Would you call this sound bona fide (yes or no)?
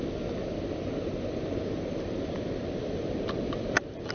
yes